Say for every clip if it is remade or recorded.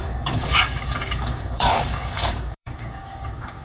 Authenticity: remade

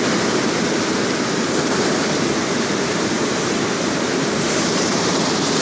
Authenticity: remade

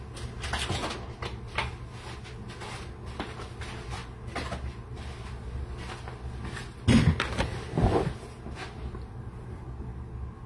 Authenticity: recorded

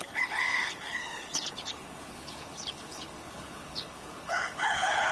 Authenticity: remade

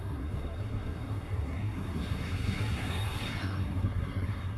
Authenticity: remade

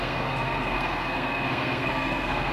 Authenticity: remade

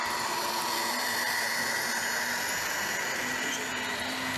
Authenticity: recorded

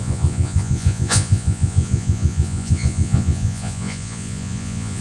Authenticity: remade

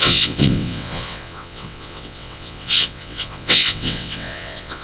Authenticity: remade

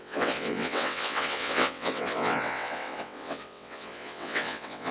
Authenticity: remade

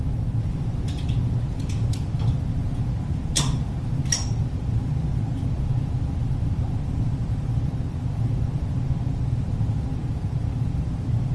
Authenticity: remade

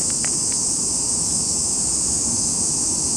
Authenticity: remade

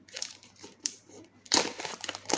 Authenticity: remade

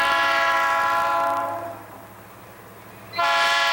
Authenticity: recorded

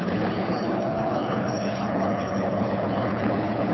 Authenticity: remade